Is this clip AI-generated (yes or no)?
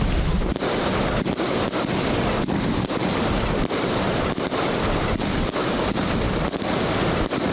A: no